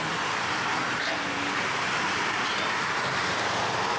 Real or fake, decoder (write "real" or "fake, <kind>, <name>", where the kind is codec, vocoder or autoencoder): real